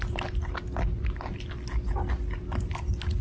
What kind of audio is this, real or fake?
real